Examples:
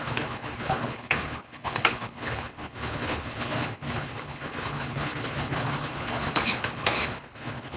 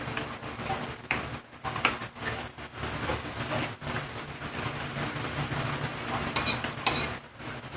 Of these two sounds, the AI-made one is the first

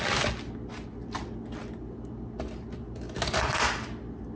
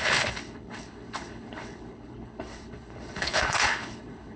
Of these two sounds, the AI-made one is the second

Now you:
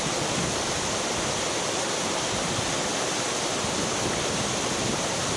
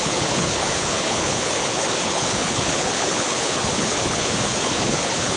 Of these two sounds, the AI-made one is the second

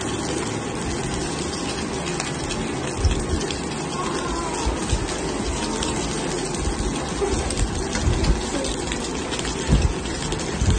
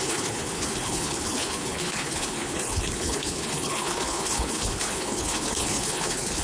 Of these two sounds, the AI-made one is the second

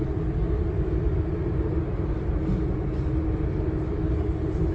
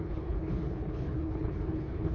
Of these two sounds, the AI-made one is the second